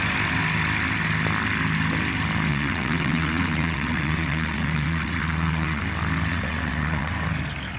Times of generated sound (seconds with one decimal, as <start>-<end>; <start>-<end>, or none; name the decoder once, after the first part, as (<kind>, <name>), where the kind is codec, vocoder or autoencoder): 2.5-5.8 (vocoder, WaveNeXt); 6.3-7.1